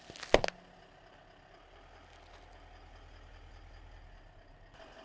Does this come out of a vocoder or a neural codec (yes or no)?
no